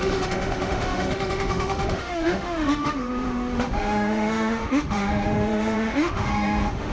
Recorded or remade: remade